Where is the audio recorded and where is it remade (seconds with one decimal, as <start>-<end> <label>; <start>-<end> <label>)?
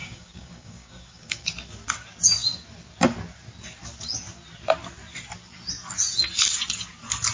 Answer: 0.0-1.5 remade; 1.5-7.3 recorded